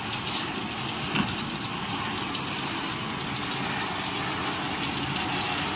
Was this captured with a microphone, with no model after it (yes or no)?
yes